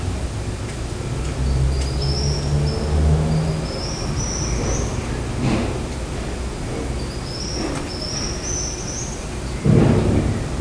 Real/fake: real